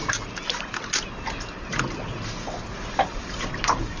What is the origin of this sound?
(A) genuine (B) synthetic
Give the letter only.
A